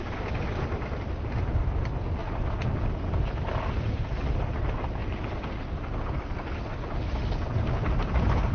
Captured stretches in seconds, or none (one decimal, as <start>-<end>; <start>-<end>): 0.0-8.5